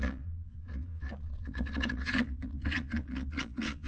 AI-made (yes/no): yes